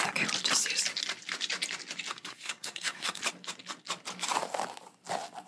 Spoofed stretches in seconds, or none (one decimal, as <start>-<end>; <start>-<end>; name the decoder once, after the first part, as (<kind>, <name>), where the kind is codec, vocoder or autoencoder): 2.1-3.2 (codec, SNAC)